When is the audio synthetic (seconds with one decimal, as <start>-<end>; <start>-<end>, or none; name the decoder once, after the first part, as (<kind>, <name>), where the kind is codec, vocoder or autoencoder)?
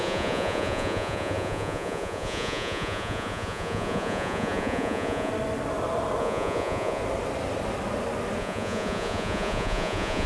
0.0-5.3 (vocoder, Vocos); 6.2-7.0; 8.4-10.3